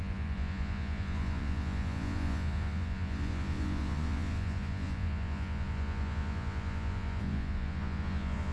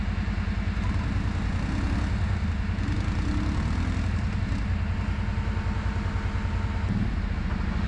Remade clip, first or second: first